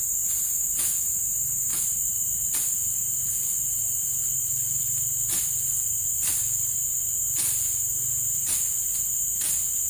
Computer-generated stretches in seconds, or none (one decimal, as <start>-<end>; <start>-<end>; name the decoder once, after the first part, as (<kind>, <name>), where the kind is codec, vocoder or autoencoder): 1.7-6.0 (vocoder, BigVGAN v2)